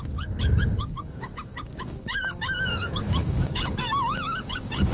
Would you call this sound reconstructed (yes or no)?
yes